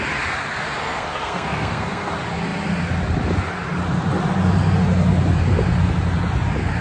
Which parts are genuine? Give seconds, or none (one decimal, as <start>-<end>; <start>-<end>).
0.0-0.8; 2.1-6.8